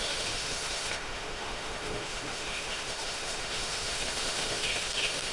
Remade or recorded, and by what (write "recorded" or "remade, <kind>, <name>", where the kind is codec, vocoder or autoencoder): remade, autoencoder, DAC-VAE